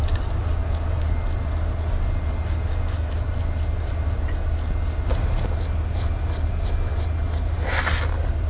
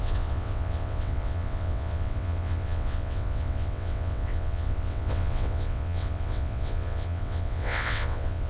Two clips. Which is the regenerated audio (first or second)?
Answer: second